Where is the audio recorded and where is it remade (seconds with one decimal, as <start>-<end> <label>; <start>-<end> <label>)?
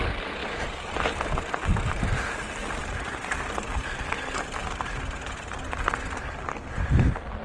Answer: 0.0-0.4 recorded; 0.4-1.1 remade; 1.1-2.8 recorded; 2.8-5.5 remade; 5.5-7.4 recorded